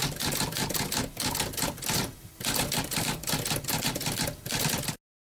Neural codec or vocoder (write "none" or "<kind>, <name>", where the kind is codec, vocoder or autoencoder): none